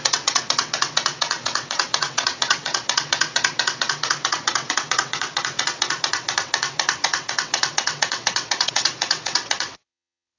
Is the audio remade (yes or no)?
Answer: yes